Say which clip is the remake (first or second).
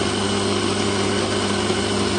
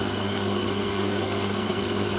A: second